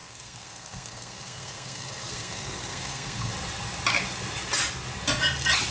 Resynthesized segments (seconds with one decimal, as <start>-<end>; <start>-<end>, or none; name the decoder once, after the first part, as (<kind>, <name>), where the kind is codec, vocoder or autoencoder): 0.0-3.3 (codec, SNAC)